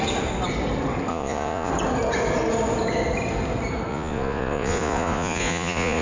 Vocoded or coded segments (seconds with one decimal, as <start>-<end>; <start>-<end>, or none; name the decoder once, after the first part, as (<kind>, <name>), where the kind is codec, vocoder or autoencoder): 1.1-1.7 (vocoder, Vocos); 3.9-6.0